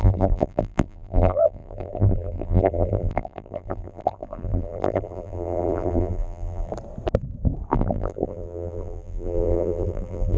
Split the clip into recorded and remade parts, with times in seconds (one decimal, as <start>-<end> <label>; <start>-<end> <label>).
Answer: 0.0-6.7 remade; 6.7-7.7 recorded; 7.7-10.4 remade